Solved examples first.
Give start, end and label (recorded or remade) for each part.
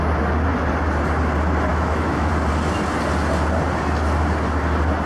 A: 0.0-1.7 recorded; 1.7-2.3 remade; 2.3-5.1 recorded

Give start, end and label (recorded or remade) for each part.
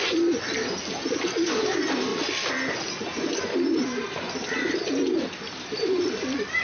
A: 0.0-6.6 recorded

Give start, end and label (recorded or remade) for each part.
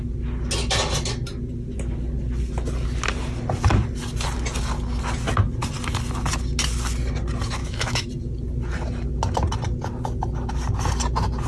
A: 0.0-7.6 recorded; 7.6-8.1 remade; 8.1-11.5 recorded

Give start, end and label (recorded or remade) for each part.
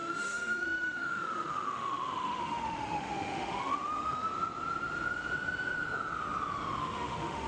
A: 0.0-4.3 remade; 4.3-6.8 recorded; 6.8-7.5 remade